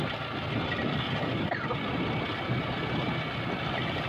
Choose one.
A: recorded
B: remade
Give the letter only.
A